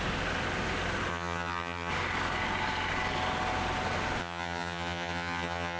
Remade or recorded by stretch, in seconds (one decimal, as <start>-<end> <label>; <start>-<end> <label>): 0.0-1.1 recorded; 1.1-1.9 remade; 1.9-4.2 recorded; 4.2-5.8 remade